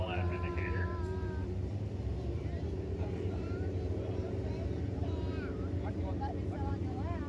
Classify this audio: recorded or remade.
remade